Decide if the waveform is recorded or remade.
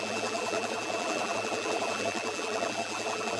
remade